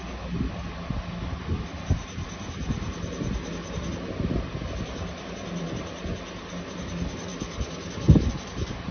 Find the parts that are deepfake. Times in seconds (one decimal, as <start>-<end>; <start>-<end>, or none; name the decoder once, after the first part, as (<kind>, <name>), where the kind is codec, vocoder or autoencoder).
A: none